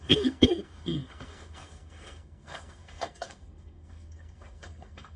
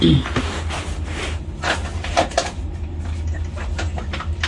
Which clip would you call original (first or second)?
second